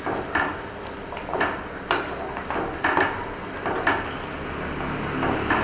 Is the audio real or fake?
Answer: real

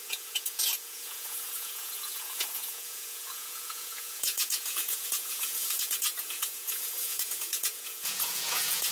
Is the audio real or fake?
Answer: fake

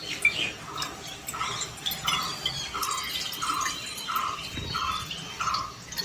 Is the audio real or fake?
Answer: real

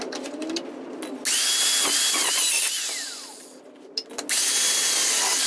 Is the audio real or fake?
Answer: real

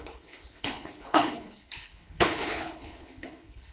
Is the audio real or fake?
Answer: fake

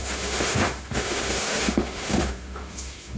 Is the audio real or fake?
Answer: fake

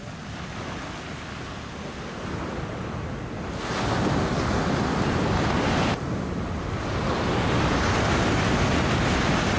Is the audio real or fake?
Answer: real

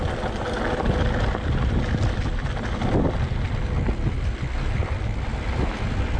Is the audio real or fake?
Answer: real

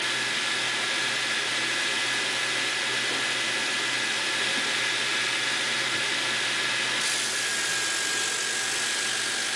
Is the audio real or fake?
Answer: real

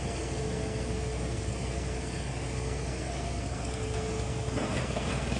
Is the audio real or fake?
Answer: fake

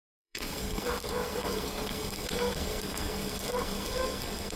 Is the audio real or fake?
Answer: fake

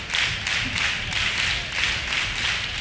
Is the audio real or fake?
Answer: real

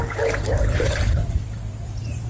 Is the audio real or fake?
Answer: fake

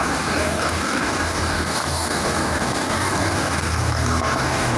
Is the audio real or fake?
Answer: fake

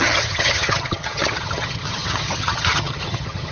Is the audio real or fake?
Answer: fake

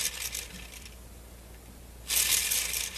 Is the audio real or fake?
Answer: real